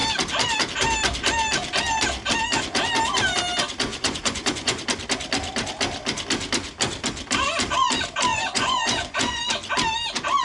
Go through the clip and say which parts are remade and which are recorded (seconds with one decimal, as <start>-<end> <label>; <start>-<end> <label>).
0.0-3.9 recorded; 3.9-4.8 remade; 4.8-8.3 recorded; 8.3-9.4 remade; 9.4-10.4 recorded